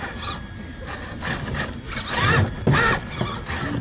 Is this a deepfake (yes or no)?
no